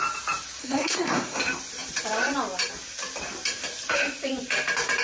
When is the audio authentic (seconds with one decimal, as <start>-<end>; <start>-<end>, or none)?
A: 0.0-0.6; 1.4-5.0